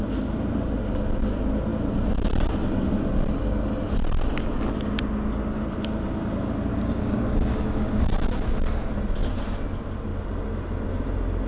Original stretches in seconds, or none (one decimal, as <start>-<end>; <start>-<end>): 0.0-6.7; 8.9-11.5